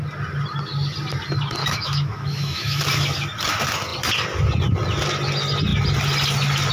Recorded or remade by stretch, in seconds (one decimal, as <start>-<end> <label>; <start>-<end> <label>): 0.0-1.6 recorded; 1.6-2.8 remade; 2.8-6.7 recorded